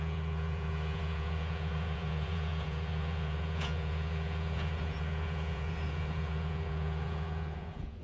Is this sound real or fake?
fake